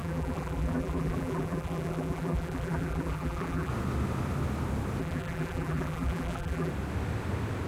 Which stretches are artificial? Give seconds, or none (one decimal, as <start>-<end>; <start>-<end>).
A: 0.0-3.7; 5.0-6.7